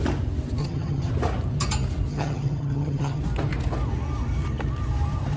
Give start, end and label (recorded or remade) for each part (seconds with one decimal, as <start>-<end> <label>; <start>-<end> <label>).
0.0-0.6 recorded; 0.6-1.1 remade; 1.1-2.1 recorded; 2.1-3.2 remade; 3.2-5.4 recorded